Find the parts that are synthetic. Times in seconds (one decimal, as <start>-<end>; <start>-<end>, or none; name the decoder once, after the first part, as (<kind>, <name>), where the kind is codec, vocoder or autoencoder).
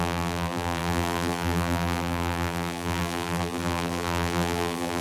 0.0-5.0 (vocoder, BigVGAN v2)